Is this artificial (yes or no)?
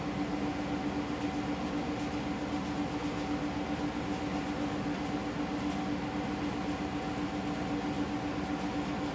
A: no